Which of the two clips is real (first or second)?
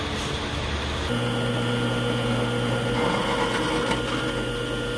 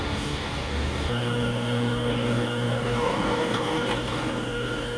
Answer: first